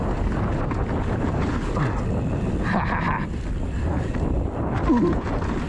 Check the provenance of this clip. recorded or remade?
recorded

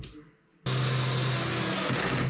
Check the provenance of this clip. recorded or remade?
recorded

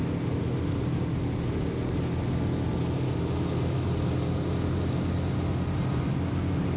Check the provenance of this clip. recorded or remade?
recorded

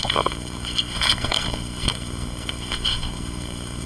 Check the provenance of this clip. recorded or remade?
remade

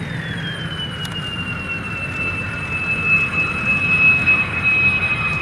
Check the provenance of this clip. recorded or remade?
recorded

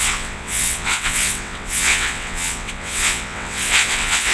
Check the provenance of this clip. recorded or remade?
remade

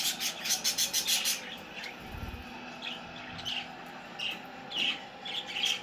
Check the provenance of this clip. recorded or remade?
recorded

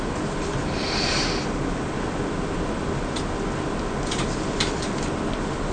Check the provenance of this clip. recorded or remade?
recorded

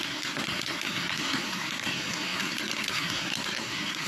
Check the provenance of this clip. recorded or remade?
remade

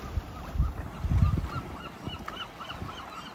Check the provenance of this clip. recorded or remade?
recorded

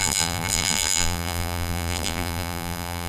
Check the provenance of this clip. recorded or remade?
remade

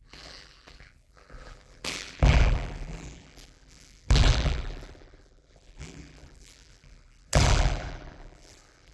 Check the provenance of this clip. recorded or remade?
remade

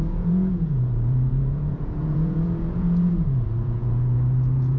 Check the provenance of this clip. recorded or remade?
remade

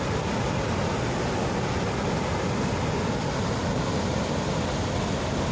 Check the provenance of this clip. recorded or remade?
recorded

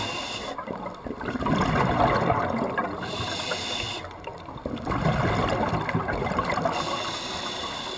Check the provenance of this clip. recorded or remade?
recorded